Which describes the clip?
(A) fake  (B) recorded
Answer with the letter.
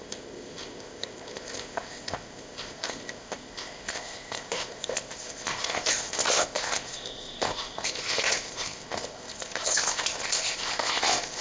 A